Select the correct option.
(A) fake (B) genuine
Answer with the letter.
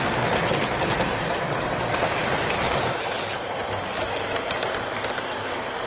B